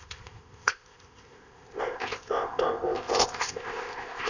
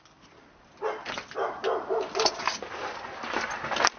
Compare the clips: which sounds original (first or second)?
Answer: second